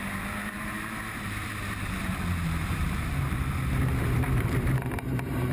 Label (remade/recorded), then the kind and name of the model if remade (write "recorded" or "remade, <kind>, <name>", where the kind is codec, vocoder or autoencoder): remade, vocoder, BigVGAN v2